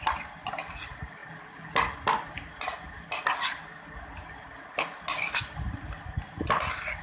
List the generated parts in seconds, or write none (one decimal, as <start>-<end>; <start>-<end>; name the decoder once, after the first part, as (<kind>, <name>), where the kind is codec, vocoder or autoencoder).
none